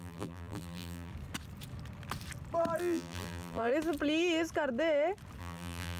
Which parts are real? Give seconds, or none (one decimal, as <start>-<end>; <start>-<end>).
1.1-2.8; 3.7-5.4

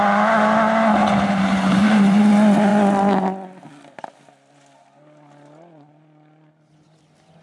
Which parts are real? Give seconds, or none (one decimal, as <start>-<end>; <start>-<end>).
0.0-1.0; 2.3-7.4

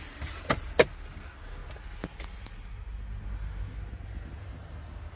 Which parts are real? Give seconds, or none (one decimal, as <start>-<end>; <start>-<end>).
0.0-5.2

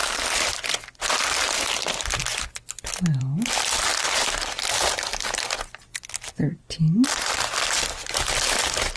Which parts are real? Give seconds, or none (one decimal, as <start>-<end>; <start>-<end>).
0.0-9.0

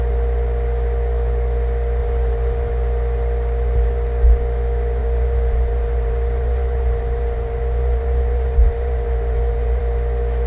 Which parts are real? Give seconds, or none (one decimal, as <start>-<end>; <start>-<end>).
0.0-2.0; 2.7-5.0; 9.8-10.5

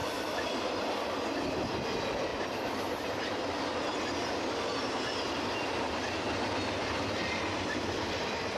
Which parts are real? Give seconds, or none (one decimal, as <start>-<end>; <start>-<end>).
0.8-8.6

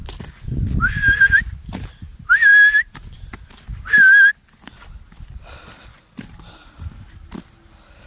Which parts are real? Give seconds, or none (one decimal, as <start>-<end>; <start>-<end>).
0.0-8.1

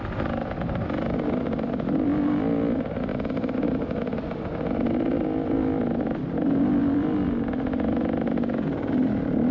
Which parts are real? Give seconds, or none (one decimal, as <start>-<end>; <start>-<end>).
0.0-3.1; 4.0-6.8; 7.5-9.5